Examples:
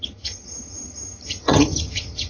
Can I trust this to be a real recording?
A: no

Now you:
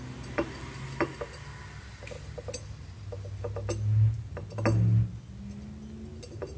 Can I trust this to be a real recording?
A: yes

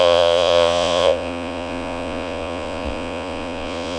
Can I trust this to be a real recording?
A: no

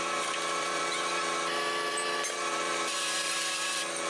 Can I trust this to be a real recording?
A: no